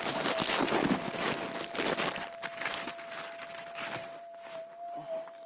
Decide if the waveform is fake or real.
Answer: real